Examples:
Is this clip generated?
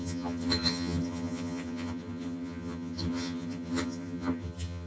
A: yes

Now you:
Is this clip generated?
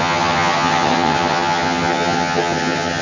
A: yes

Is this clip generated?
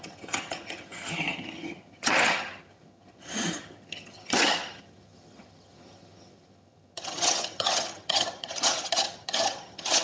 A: yes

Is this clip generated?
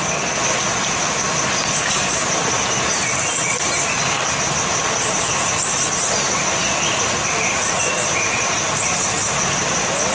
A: no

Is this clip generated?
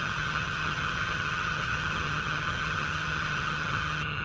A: yes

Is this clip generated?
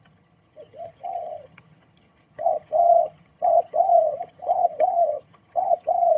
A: yes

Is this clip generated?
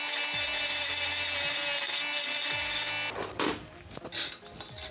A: no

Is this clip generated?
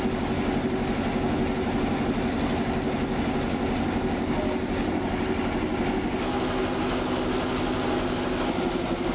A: no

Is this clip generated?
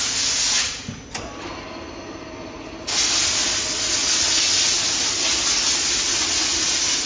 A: no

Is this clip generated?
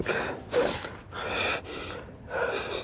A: no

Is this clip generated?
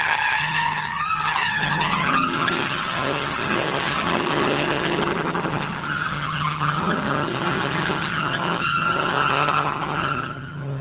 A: yes